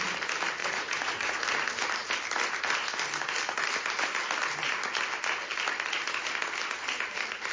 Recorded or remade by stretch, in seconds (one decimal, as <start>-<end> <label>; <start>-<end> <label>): 0.0-0.6 recorded; 0.6-1.4 remade; 1.4-7.5 recorded